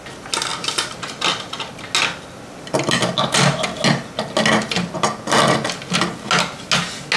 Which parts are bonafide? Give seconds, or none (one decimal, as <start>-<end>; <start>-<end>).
0.0-7.2